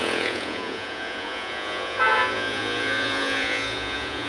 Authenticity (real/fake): fake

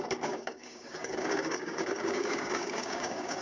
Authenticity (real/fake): fake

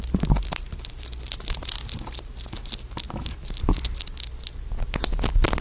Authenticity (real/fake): real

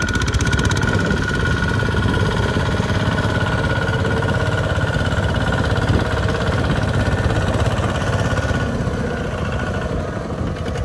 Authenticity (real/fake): real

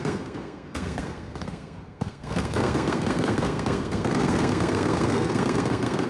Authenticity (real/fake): fake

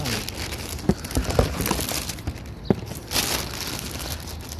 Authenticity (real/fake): real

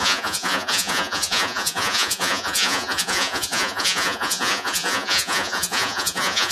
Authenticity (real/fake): fake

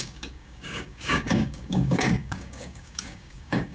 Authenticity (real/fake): fake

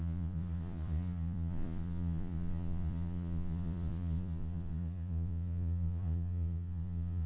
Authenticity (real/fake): fake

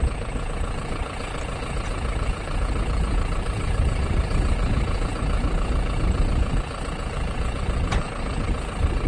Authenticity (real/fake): fake